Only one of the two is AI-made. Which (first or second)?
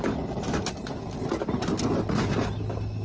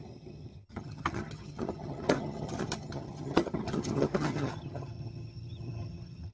second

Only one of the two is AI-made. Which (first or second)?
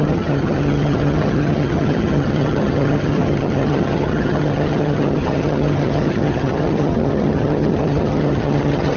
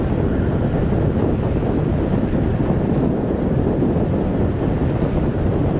first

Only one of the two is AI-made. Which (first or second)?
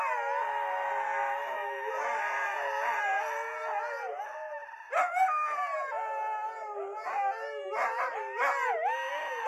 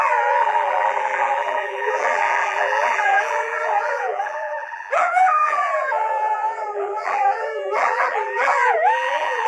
second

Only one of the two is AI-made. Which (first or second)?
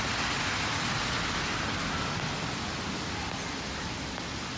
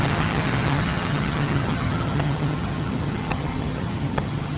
second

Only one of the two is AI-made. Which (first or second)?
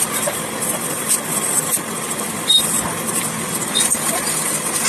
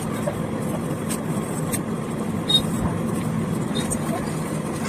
second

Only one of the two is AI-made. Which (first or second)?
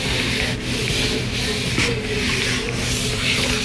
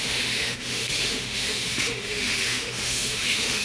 second